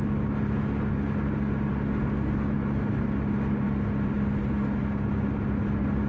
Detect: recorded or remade recorded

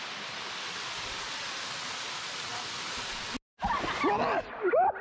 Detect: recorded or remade recorded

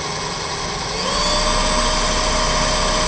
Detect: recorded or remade recorded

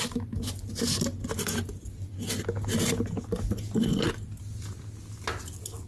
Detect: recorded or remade recorded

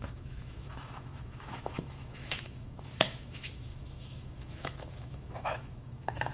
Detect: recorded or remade remade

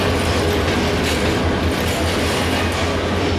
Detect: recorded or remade recorded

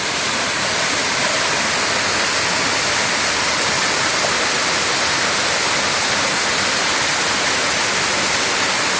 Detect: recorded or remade recorded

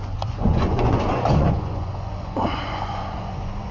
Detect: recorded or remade remade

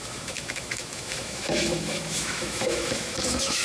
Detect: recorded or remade remade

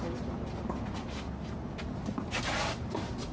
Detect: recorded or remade recorded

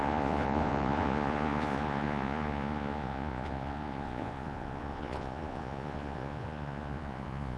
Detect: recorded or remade remade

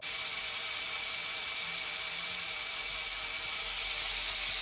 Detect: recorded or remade recorded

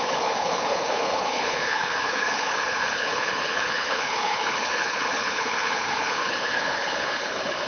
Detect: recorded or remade remade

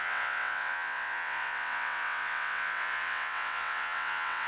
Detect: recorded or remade remade